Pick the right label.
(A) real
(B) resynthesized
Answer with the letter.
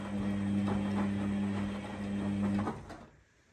A